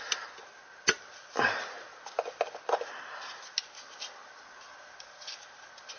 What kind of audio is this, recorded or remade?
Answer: recorded